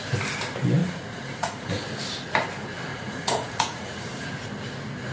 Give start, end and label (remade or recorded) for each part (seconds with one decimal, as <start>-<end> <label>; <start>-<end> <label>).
0.0-0.8 recorded; 0.8-1.7 remade; 1.7-2.9 recorded; 2.9-4.3 remade; 4.3-5.1 recorded